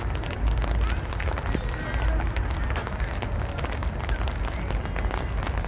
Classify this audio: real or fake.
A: real